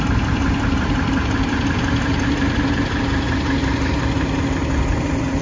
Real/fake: real